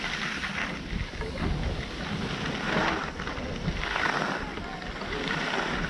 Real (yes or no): yes